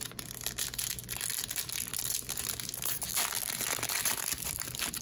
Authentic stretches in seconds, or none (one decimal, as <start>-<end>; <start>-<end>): 0.0-5.0

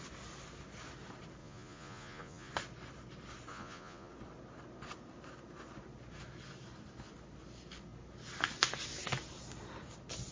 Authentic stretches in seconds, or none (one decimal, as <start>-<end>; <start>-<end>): 0.0-1.4; 2.5-3.5; 4.1-10.3

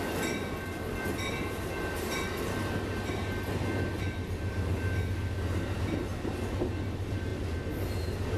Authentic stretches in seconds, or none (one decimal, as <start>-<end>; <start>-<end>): 0.0-8.4

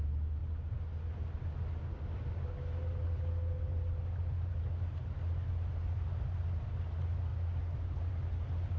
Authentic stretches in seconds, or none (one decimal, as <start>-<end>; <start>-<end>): 0.0-8.8

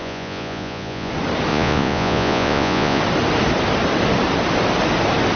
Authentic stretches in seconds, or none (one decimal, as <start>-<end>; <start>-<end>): 1.1-1.5; 3.0-5.4

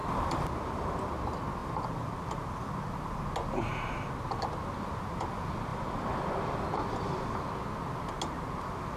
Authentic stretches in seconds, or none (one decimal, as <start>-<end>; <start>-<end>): 1.1-1.6; 2.7-5.7; 7.4-9.0

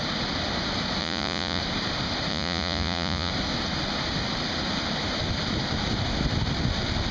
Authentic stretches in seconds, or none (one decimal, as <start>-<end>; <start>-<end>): 0.0-1.0; 1.6-2.3; 3.3-7.1

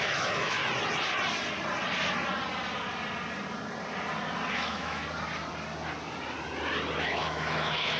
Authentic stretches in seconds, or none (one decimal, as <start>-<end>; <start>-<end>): 0.6-4.5; 5.0-7.0